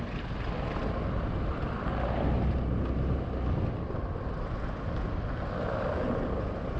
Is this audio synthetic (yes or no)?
no